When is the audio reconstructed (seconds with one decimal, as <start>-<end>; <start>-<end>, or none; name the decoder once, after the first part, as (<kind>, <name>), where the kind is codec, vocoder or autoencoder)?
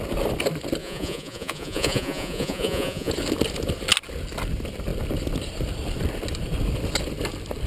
0.8-3.1 (vocoder, Vocos)